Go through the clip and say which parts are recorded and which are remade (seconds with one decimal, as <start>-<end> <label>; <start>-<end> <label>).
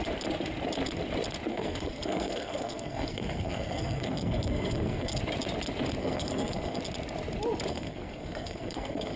0.0-1.5 recorded; 1.5-5.2 remade; 5.2-6.0 recorded; 6.0-6.8 remade; 6.8-7.7 recorded; 7.7-9.2 remade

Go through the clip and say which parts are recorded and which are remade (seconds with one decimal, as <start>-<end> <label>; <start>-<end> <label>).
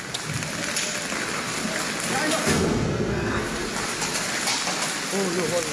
0.0-2.4 recorded; 2.4-3.7 remade; 3.7-5.7 recorded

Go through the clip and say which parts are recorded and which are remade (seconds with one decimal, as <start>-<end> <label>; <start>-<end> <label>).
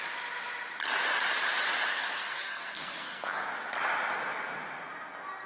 0.0-1.9 recorded; 1.9-3.5 remade; 3.5-5.5 recorded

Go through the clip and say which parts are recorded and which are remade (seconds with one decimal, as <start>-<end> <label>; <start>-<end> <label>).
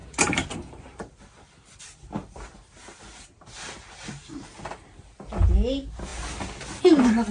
0.0-7.3 recorded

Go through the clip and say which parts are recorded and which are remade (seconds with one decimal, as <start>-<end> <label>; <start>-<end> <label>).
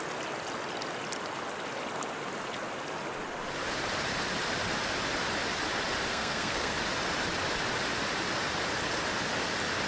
0.0-6.1 recorded; 6.1-6.7 remade; 6.7-9.9 recorded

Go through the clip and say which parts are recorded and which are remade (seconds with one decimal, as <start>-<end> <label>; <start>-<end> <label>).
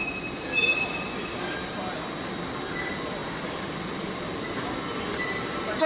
0.0-5.9 recorded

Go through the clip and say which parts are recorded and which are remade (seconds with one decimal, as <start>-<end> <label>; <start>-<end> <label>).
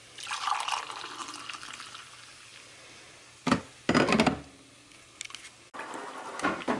0.0-6.8 recorded